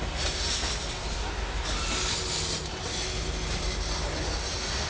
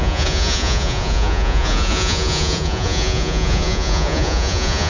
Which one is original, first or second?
first